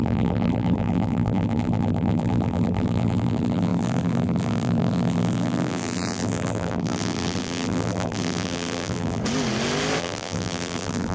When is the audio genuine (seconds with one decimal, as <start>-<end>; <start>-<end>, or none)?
9.2-10.0